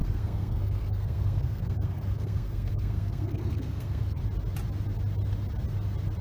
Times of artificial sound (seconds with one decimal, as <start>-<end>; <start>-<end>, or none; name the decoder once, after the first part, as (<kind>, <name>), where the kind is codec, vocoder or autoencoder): 0.0-4.2 (codec, SNAC)